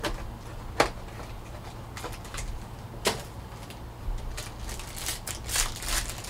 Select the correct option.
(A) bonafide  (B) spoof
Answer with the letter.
A